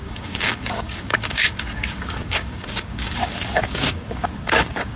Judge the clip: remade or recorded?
remade